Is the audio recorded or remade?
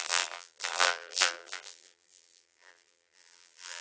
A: remade